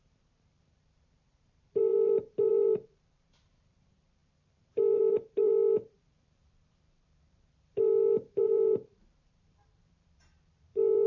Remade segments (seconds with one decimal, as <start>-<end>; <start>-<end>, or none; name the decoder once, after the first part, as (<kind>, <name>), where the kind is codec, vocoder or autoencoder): 0.0-11.1 (vocoder, BigVGAN v2)